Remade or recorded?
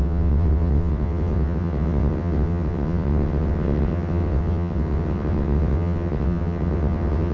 remade